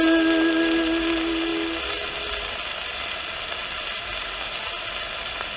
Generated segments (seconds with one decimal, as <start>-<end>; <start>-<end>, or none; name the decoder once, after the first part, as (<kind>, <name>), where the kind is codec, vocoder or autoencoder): none